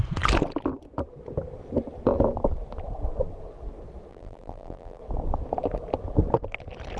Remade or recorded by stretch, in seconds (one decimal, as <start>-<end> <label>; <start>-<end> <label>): 0.0-4.1 recorded; 4.1-5.0 remade; 5.0-7.0 recorded